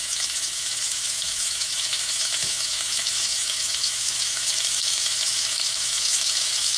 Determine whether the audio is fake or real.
fake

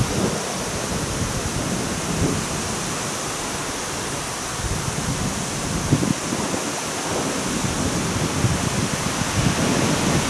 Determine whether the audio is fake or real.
real